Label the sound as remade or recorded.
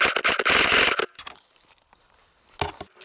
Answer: recorded